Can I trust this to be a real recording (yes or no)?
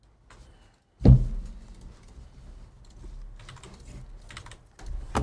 yes